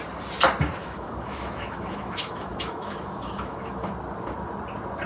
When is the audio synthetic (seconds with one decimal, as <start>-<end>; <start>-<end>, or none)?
0.8-3.9